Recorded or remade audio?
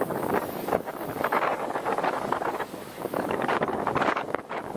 remade